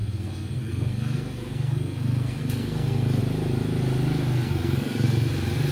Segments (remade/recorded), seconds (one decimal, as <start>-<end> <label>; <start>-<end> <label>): 0.0-3.2 remade; 3.2-4.3 recorded; 4.3-5.3 remade; 5.3-5.7 recorded